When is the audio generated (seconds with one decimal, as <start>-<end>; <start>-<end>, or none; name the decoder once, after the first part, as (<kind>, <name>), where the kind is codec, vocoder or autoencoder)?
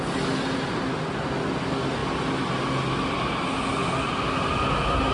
none